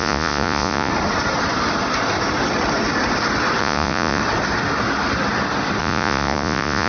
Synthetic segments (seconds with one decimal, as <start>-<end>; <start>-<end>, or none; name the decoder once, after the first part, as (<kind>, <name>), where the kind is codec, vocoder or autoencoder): 0.0-0.9 (vocoder, Vocos); 3.6-4.2; 5.8-6.9